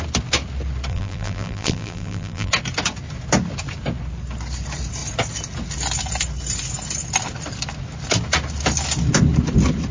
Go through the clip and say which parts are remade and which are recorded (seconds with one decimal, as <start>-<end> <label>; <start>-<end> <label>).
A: 0.0-0.9 recorded; 0.9-2.5 remade; 2.5-9.9 recorded